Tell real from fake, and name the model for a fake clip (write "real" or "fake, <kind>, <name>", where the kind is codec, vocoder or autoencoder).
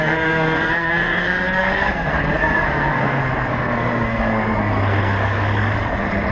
fake, codec, SNAC